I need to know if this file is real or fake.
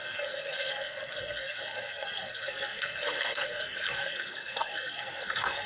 fake